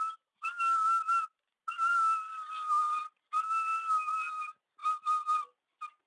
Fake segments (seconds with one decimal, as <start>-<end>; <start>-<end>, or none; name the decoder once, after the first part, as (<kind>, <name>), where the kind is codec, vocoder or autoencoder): none